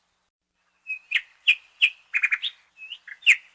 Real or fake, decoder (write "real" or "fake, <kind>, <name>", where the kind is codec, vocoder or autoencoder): real